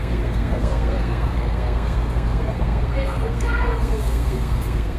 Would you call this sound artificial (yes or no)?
yes